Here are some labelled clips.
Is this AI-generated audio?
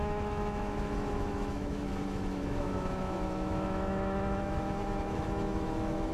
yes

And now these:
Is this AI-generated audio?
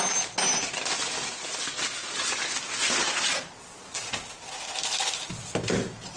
no